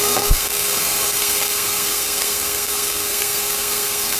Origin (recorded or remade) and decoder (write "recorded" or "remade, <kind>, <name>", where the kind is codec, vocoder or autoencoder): remade, codec, SNAC